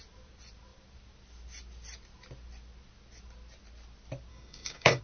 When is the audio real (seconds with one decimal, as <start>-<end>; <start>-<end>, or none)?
0.0-4.3